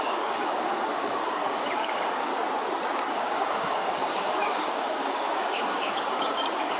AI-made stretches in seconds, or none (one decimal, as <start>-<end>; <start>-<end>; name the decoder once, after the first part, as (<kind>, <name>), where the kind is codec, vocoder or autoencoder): 0.0-2.3 (codec, DAC); 3.1-6.8